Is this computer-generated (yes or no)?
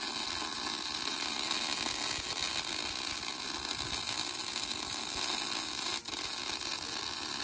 no